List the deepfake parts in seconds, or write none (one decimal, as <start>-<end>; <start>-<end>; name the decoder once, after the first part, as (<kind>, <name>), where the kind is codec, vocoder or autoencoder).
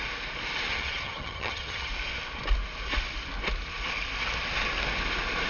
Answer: 0.7-1.9 (vocoder, HiFi-GAN)